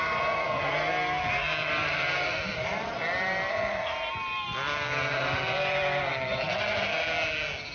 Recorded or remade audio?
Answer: recorded